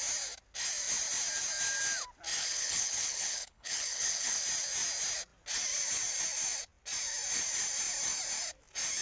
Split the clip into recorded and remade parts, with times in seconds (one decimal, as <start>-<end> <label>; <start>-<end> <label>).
0.0-2.4 recorded; 2.4-4.4 remade; 4.4-9.0 recorded